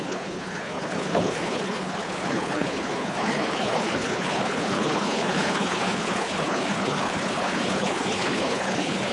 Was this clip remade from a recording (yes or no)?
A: yes